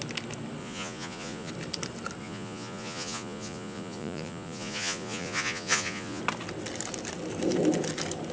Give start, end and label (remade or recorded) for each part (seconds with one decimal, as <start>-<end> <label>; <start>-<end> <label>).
0.0-0.6 recorded; 0.6-1.5 remade; 1.5-2.2 recorded; 2.2-6.2 remade; 6.2-8.3 recorded